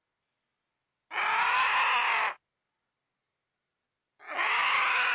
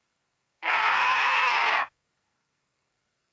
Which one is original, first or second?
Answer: first